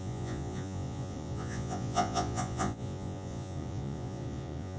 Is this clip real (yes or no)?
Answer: no